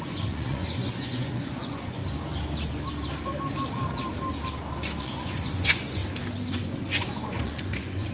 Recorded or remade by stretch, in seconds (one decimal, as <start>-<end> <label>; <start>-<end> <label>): 0.0-2.0 remade; 2.0-5.0 recorded; 5.0-6.0 remade; 6.0-6.5 recorded; 6.5-8.1 remade